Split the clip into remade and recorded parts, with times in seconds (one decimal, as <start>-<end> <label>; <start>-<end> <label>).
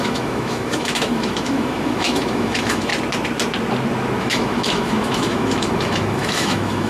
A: 0.0-2.9 remade; 2.9-4.2 recorded; 4.2-6.9 remade